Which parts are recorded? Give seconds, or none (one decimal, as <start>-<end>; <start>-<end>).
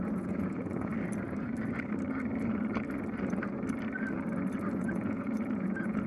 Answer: 0.9-4.6